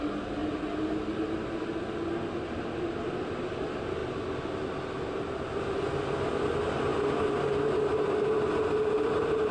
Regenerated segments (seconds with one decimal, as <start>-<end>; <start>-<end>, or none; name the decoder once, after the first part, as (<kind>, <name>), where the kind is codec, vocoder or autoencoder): none